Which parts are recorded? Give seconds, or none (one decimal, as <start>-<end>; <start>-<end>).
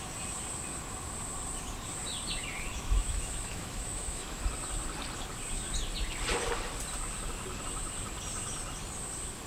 0.0-2.7; 4.4-9.5